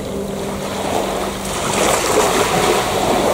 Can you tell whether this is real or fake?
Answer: real